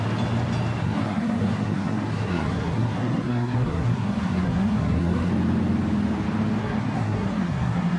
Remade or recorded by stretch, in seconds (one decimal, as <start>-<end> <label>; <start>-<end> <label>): 0.0-0.8 recorded; 0.8-5.3 remade; 5.3-6.6 recorded; 6.6-8.0 remade